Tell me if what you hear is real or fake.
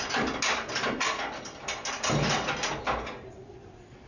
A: real